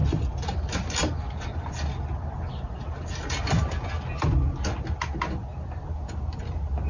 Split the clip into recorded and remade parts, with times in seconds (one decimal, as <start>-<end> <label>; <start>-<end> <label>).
0.0-6.9 recorded